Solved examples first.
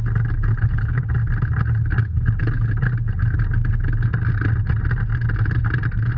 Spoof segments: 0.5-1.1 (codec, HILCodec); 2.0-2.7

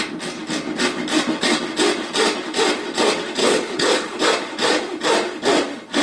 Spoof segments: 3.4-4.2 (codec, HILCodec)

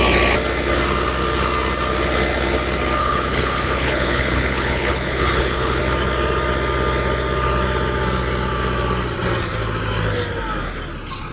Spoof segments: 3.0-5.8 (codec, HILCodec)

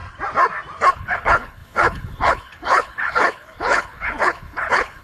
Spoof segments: 0.9-5.0 (codec, HILCodec)